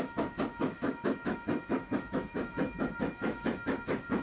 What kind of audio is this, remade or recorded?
remade